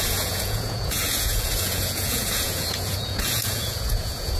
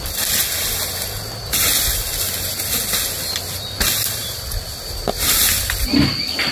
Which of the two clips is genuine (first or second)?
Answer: second